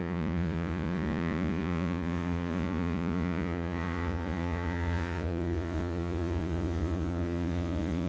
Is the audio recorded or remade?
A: remade